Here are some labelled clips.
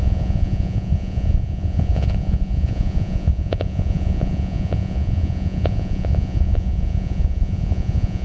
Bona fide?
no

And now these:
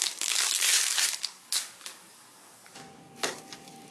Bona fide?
no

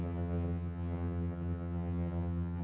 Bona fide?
no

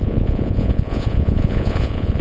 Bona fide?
no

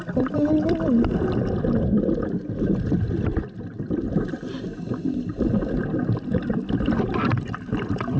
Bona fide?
yes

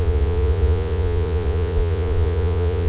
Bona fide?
no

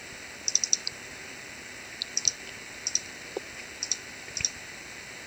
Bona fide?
yes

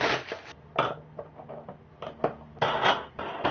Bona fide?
yes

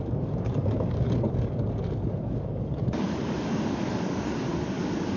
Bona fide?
no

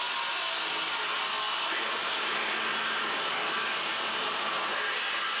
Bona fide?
yes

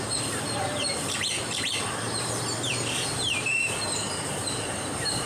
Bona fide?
no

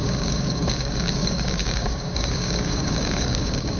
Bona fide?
no